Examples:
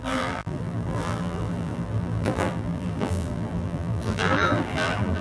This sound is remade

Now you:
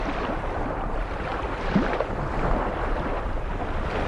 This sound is remade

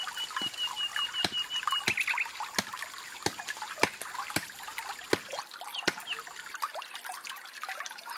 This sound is recorded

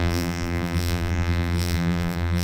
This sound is remade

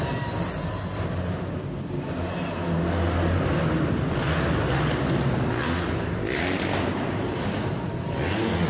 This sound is recorded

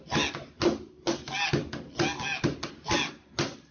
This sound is recorded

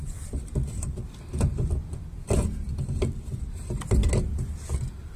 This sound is recorded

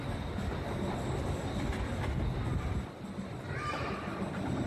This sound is recorded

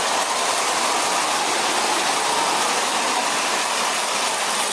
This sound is recorded